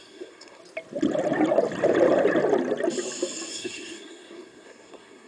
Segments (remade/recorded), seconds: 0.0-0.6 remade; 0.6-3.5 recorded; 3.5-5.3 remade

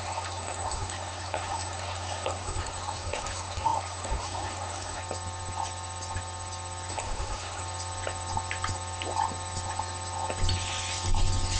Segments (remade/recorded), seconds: 0.0-5.0 remade; 5.0-6.9 recorded; 6.9-7.6 remade; 7.6-11.6 recorded

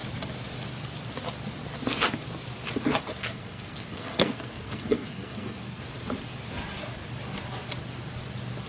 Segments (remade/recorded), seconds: 0.0-3.2 recorded; 3.2-5.8 remade; 5.8-8.7 recorded

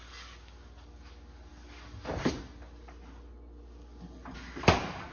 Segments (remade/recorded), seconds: 0.0-5.1 recorded

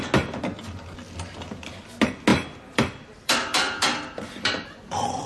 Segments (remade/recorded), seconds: 0.0-2.3 recorded; 2.3-5.3 remade

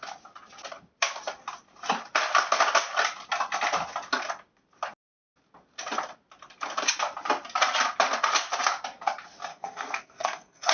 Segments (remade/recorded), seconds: 0.0-9.5 recorded; 9.5-10.7 remade

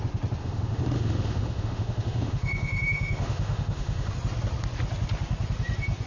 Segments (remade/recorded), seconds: 0.0-0.4 recorded; 0.4-4.1 remade; 4.1-6.1 recorded

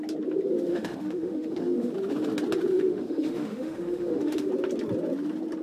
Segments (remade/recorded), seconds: 0.0-0.7 recorded; 0.7-1.9 remade; 1.9-2.7 recorded; 2.7-4.5 remade; 4.5-5.6 recorded